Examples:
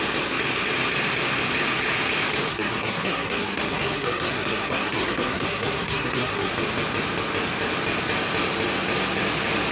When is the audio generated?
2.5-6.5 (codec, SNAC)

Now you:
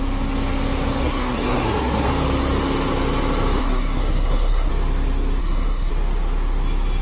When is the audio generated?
1.0-2.1 (codec, SNAC); 3.6-4.7; 5.4-5.9